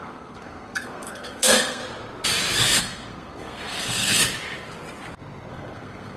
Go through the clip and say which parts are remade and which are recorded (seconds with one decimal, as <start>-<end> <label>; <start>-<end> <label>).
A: 0.0-1.8 remade; 1.8-2.8 recorded; 2.8-4.2 remade; 4.2-5.5 recorded; 5.5-6.2 remade